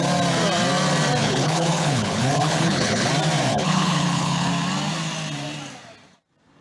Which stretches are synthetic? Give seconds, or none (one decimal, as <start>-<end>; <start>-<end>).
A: 1.2-3.1; 3.5-4.5